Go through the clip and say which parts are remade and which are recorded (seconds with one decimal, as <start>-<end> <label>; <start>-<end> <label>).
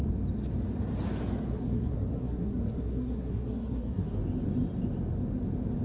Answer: 0.0-1.5 recorded; 1.5-4.2 remade; 4.2-5.8 recorded